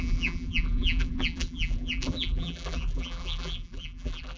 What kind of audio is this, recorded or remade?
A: remade